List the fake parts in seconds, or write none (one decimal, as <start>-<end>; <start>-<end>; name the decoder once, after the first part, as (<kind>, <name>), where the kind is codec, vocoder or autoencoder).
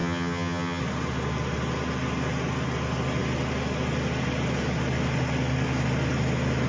0.0-0.8 (vocoder, HiFi-GAN)